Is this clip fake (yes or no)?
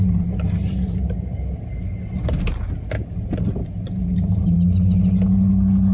no